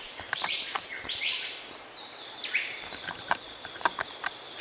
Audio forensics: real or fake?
fake